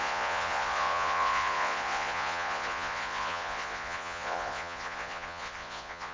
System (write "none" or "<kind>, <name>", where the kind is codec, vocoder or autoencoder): vocoder, Vocos